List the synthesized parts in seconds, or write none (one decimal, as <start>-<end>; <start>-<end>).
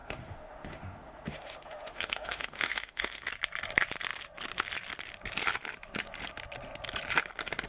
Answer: 0.0-3.3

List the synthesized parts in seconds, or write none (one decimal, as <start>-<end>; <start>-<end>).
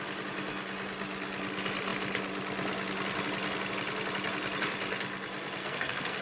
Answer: 5.6-6.2